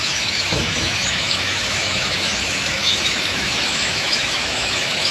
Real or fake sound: fake